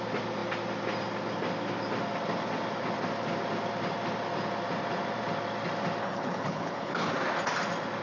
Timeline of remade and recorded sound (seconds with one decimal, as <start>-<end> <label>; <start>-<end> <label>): 0.0-6.0 recorded; 6.0-7.1 remade; 7.1-8.0 recorded